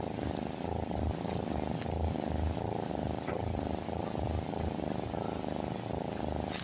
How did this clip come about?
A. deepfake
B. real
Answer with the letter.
B